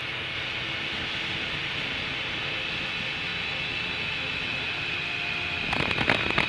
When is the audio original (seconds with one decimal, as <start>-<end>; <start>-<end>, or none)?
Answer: 0.0-6.5

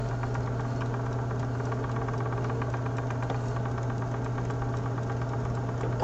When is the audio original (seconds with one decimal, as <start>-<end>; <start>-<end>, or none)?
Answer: 0.0-6.0

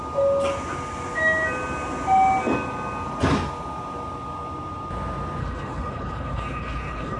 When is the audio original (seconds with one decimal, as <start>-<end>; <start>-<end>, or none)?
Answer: 0.0-5.4